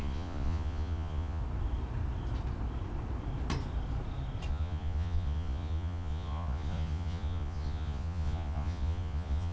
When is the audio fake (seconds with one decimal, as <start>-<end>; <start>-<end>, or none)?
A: 0.0-1.4; 4.5-9.5

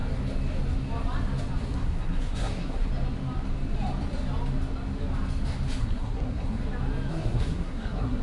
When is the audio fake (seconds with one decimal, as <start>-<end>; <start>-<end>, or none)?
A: 1.6-2.9; 5.8-6.6; 7.1-8.2

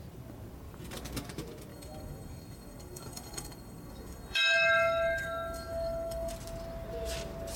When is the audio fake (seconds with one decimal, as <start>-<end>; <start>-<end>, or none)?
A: 1.7-6.3

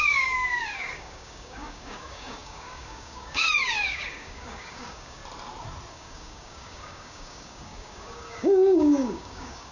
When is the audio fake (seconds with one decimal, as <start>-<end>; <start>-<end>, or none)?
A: 0.0-5.2; 5.9-9.7

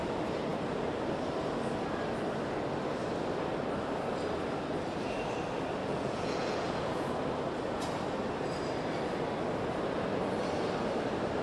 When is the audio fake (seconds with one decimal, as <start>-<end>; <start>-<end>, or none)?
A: 5.8-7.2

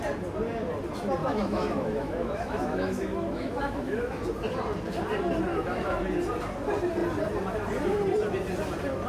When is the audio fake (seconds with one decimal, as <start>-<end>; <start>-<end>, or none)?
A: 1.2-4.2; 5.5-6.0

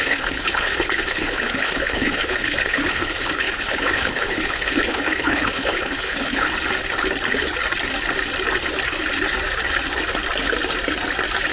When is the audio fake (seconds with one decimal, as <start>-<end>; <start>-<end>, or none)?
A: 0.0-6.5

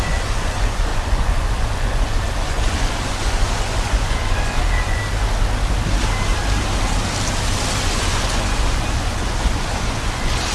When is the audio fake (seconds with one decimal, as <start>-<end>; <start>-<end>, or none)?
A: 0.0-5.0; 7.8-10.5